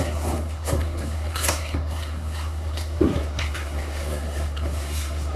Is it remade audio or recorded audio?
remade